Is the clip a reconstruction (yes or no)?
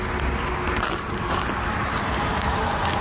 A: no